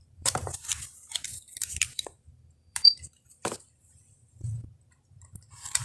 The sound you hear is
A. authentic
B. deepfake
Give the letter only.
B